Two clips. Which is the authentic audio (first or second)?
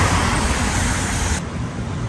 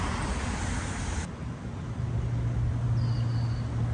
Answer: second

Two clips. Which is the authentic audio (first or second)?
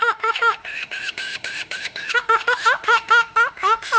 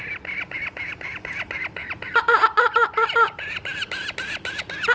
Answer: second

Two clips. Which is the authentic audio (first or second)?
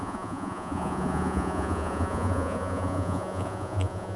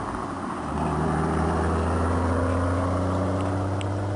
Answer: second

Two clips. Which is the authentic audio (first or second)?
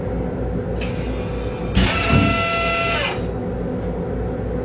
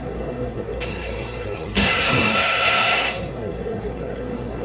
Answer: first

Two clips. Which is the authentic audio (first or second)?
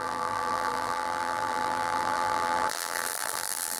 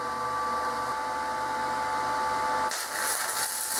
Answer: second